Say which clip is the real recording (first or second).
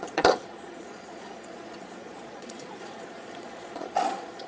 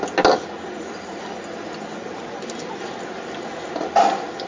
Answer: second